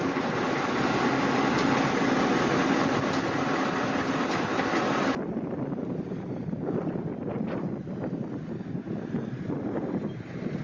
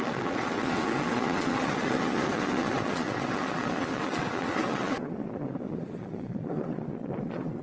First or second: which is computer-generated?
second